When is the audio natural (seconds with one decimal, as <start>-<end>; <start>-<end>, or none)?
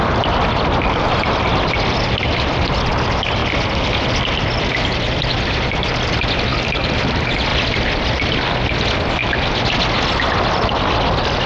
3.4-4.8; 7.5-8.0; 9.2-11.5